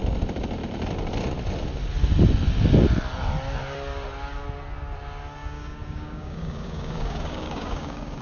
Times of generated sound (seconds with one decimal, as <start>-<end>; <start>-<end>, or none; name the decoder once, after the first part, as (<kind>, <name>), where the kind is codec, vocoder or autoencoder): 5.4-8.2 (codec, DAC)